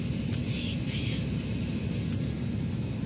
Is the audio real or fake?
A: real